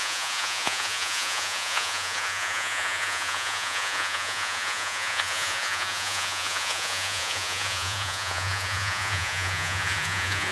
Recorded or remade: remade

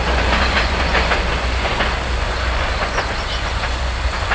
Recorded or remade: remade